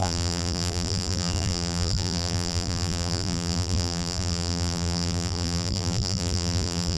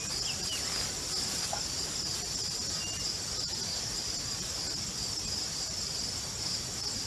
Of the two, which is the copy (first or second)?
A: first